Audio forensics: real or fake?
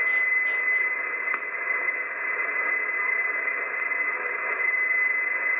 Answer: real